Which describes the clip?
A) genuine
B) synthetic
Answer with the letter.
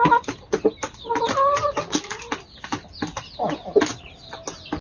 A